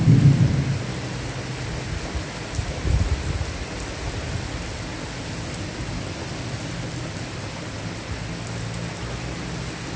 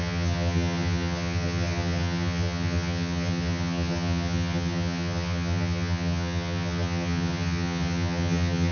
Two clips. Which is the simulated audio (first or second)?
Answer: second